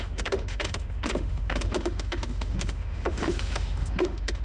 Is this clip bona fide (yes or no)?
no